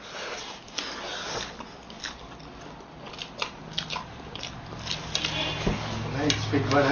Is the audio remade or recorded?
recorded